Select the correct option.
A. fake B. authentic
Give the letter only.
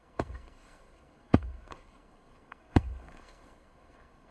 A